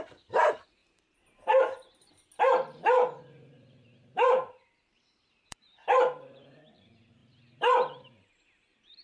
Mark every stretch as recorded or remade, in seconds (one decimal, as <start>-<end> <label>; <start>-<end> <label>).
0.0-0.8 recorded; 0.8-2.1 remade; 2.1-2.8 recorded; 2.8-6.5 remade; 6.5-7.2 recorded; 7.2-8.3 remade; 8.3-9.0 recorded